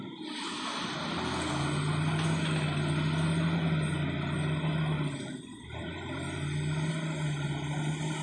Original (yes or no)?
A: yes